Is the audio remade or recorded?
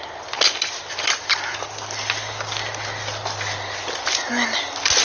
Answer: recorded